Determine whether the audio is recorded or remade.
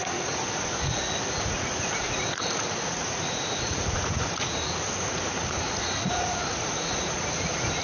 remade